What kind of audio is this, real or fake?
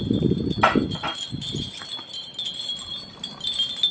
real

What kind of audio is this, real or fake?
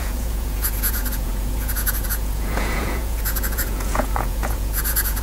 fake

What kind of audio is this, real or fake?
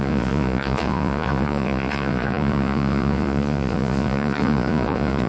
fake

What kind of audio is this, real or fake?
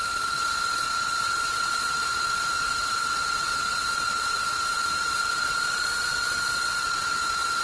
fake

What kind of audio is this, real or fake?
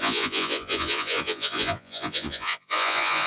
fake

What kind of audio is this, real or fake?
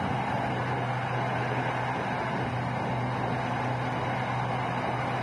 real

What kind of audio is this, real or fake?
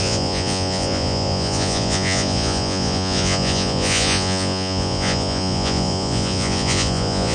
fake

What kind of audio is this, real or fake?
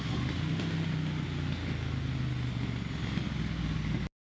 real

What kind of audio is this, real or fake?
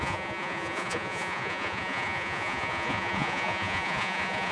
fake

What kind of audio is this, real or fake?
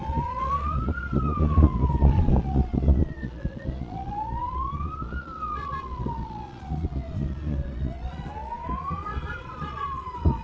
fake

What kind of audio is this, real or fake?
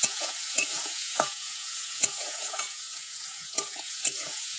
fake